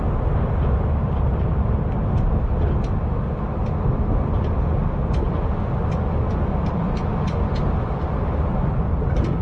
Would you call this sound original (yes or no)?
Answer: yes